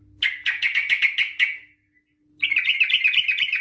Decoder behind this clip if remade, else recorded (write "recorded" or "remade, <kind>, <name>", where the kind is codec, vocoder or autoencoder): recorded